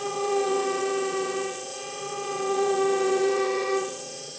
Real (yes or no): no